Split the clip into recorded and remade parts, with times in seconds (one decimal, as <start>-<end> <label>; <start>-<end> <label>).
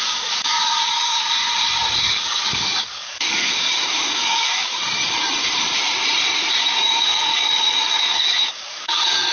0.0-1.4 remade; 1.4-2.0 recorded; 2.0-4.7 remade; 4.7-6.6 recorded; 6.6-9.3 remade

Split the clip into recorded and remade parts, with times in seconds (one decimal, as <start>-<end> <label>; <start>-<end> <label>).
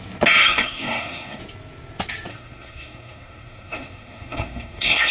0.0-0.4 recorded; 0.4-1.4 remade; 1.4-2.3 recorded; 2.3-5.1 remade